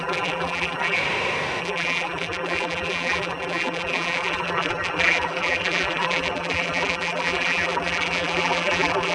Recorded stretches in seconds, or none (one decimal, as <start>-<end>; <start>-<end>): 1.0-1.6